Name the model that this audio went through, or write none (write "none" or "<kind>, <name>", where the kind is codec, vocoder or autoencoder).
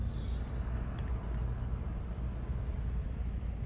none